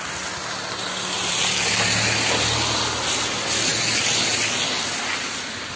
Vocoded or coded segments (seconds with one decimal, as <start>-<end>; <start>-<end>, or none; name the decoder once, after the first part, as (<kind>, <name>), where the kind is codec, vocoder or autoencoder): none